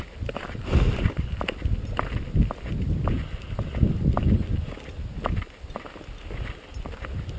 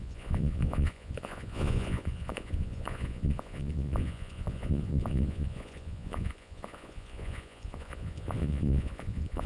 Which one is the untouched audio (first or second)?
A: first